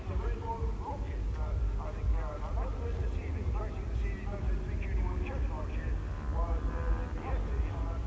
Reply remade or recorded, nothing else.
recorded